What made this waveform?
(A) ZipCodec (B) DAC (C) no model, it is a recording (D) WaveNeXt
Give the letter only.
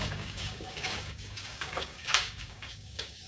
B